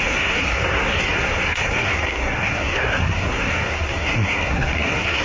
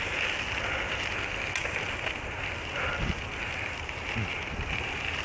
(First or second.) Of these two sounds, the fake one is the first